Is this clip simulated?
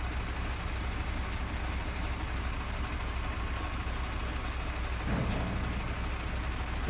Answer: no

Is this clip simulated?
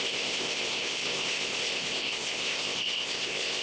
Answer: yes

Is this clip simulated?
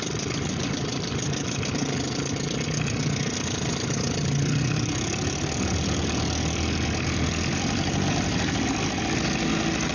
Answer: no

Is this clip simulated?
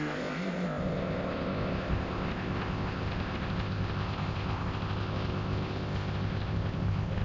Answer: yes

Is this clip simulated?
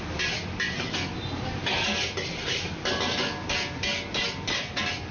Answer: no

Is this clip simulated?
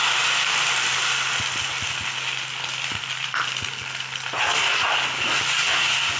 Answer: no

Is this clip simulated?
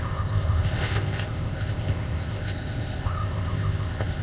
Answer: yes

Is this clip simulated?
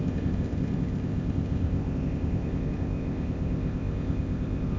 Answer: yes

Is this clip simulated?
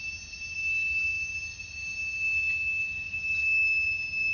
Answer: no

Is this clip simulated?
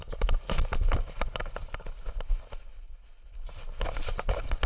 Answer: no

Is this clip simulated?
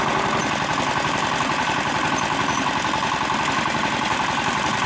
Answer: no